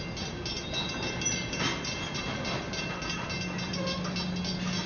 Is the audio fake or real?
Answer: real